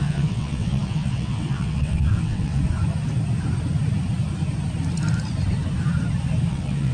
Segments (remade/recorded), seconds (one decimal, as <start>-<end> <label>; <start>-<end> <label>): 0.0-2.6 remade; 2.6-6.5 recorded; 6.5-6.9 remade